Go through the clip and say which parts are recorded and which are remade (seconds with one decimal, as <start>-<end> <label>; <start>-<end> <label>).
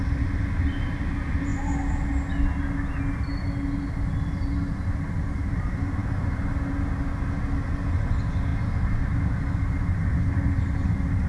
0.0-11.3 recorded